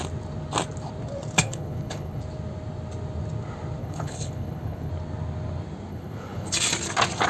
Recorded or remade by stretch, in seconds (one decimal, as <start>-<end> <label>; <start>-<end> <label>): 0.0-1.4 recorded; 1.4-2.2 remade; 2.2-3.8 recorded; 3.8-4.9 remade; 4.9-5.9 recorded; 5.9-6.5 remade; 6.5-7.3 recorded